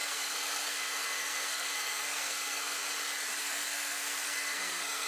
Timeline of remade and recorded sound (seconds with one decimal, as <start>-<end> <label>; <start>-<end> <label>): 0.0-2.8 remade; 2.8-3.4 recorded; 3.4-5.1 remade